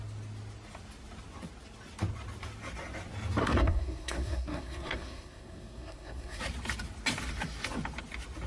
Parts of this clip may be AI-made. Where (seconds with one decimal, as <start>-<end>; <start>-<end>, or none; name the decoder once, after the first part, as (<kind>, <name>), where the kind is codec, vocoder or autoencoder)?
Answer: 3.4-6.4 (codec, SNAC)